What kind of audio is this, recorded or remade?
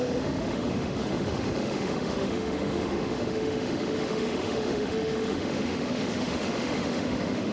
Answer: remade